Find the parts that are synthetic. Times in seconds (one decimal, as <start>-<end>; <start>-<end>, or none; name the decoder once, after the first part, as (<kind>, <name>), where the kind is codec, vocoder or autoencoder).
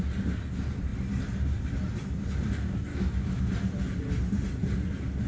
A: 2.9-3.5 (autoencoder, DAC-VAE)